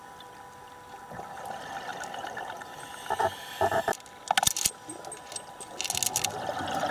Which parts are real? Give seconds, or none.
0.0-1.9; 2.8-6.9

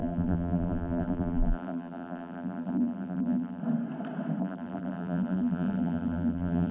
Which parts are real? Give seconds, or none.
3.6-4.4